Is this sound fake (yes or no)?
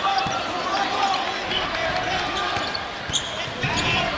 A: no